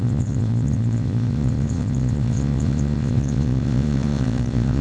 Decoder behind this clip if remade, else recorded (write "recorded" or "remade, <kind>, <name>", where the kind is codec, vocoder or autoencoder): remade, vocoder, Vocos